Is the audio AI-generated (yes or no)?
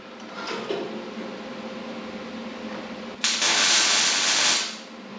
no